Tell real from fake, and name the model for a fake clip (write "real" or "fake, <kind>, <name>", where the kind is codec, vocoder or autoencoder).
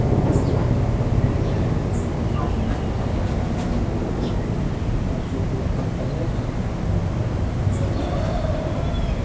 real